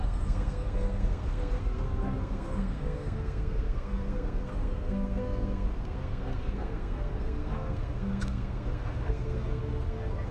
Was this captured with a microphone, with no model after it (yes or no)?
no